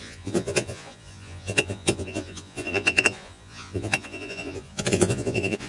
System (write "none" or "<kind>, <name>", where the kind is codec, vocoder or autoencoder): vocoder, Vocos